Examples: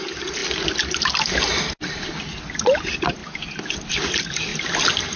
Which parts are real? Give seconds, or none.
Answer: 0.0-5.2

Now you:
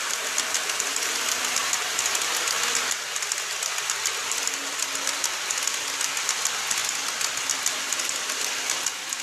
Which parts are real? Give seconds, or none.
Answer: 0.0-4.2; 4.8-9.2